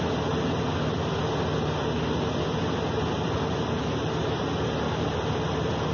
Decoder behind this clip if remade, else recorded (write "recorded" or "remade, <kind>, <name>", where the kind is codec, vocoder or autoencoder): recorded